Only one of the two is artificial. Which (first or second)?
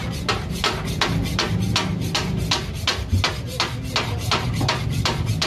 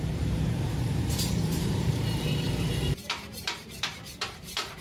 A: second